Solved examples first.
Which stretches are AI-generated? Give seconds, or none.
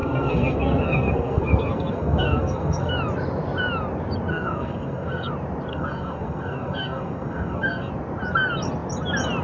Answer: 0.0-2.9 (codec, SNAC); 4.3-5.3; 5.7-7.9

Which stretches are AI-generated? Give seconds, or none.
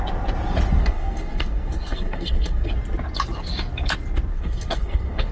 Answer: 0.8-2.7 (codec, SNAC); 4.3-5.3